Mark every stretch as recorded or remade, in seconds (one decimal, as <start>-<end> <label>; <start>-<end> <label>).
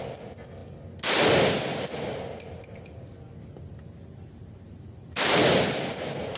0.0-6.4 recorded